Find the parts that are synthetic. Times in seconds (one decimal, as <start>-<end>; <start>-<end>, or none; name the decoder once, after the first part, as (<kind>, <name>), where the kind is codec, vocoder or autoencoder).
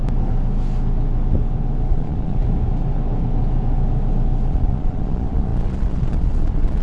1.9-2.4 (vocoder, Vocos); 4.5-6.8